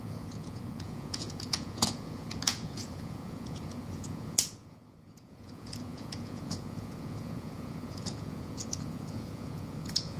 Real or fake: fake